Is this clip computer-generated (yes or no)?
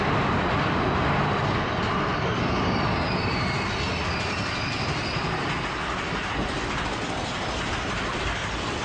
no